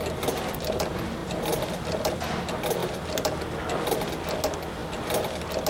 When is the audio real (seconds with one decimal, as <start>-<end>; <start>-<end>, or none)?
0.0-5.7